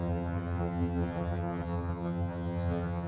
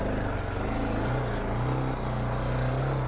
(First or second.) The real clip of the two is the second